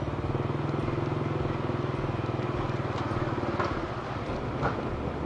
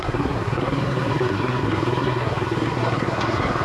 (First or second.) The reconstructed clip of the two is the second